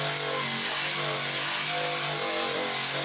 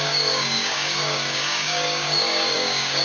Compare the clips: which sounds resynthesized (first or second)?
second